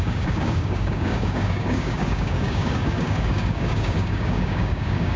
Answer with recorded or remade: remade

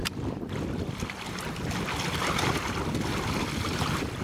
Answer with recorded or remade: recorded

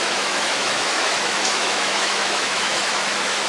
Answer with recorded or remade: remade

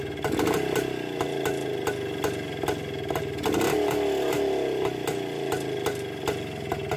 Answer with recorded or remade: recorded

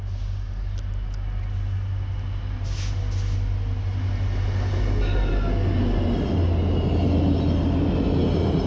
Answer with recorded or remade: recorded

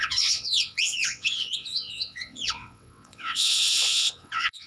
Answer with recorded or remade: remade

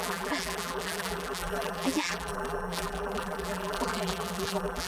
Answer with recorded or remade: remade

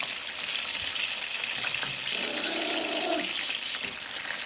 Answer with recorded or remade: recorded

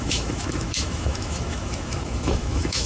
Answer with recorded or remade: remade